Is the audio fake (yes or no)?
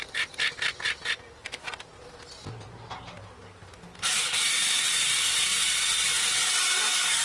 no